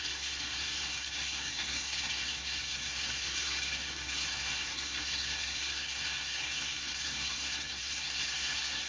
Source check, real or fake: fake